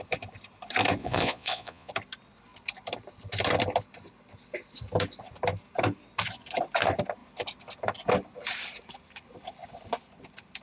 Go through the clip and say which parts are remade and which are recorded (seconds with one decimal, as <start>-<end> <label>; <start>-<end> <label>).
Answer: 0.0-1.0 recorded; 1.0-1.9 remade; 1.9-10.6 recorded